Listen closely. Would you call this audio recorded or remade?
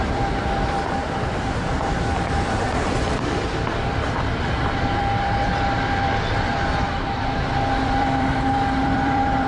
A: remade